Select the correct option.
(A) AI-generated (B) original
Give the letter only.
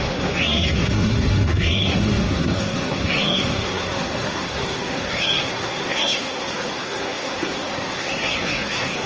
A